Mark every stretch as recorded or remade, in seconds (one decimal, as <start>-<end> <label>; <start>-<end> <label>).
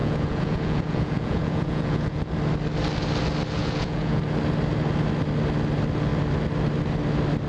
0.0-2.3 remade; 2.3-3.6 recorded; 3.6-4.2 remade; 4.2-7.5 recorded